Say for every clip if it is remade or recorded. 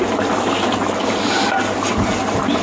recorded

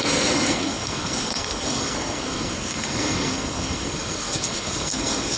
remade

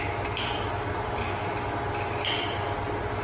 recorded